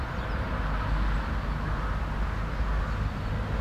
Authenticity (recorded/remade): recorded